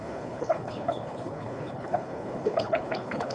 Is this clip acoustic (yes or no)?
no